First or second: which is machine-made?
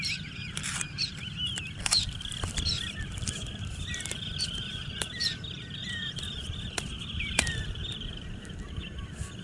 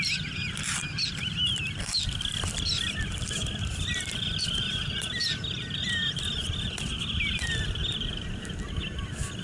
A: first